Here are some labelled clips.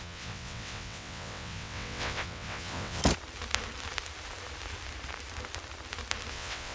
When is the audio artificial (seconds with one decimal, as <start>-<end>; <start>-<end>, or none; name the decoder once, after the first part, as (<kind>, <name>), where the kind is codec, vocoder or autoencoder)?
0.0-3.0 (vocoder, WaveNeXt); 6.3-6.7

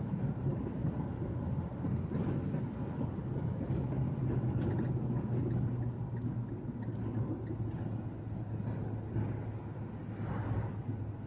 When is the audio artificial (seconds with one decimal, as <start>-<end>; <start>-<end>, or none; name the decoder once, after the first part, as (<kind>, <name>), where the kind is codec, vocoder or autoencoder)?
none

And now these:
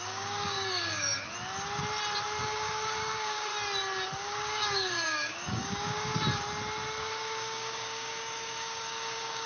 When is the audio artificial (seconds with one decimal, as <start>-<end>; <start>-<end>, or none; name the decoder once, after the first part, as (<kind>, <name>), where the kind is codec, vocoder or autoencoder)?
0.0-1.1 (codec, DAC); 2.4-3.5; 4.2-6.1; 7.0-9.5

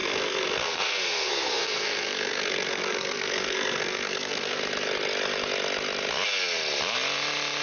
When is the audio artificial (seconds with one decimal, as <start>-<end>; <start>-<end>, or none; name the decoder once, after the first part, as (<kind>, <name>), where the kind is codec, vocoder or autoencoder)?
0.0-4.6 (codec, SNAC)